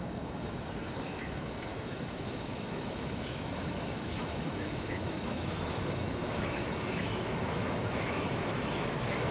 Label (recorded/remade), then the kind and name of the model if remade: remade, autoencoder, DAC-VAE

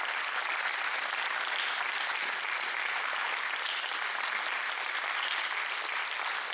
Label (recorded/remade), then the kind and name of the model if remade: recorded